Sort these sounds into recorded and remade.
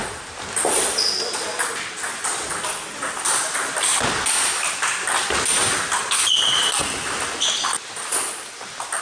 recorded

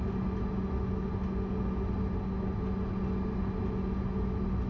recorded